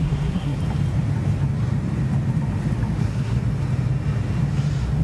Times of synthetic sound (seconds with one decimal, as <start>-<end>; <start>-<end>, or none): 0.0-0.6; 3.0-3.4